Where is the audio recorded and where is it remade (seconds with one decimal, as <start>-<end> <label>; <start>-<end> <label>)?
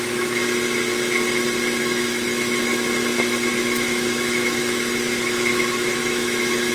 0.0-0.4 remade; 0.4-1.8 recorded; 1.8-2.7 remade; 2.7-3.5 recorded; 3.5-6.7 remade